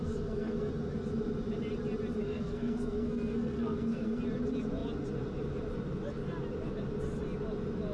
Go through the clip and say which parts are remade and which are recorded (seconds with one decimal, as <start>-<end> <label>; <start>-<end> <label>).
0.0-0.7 remade; 0.7-2.2 recorded; 2.2-4.2 remade; 4.2-7.9 recorded